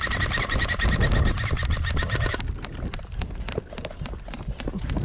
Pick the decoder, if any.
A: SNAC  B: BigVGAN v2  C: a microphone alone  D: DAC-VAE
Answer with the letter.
C